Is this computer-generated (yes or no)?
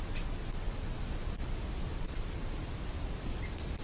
no